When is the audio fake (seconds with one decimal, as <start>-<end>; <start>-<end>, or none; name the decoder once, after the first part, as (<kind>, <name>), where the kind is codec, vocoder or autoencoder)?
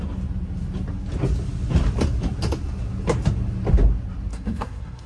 4.3-5.1 (codec, SNAC)